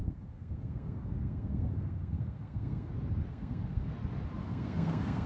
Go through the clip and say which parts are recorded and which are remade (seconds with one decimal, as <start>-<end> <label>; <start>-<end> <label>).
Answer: 0.0-2.9 remade; 2.9-3.3 recorded; 3.3-3.9 remade; 3.9-4.4 recorded; 4.4-5.3 remade